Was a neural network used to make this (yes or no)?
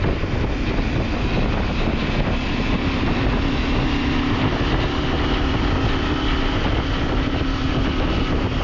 no